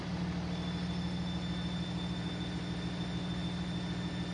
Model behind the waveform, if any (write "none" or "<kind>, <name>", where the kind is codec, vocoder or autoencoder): none